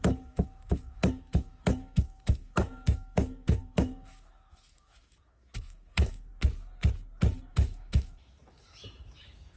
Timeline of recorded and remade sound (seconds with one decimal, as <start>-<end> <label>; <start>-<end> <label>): 0.0-6.3 remade; 6.3-7.5 recorded; 7.5-9.6 remade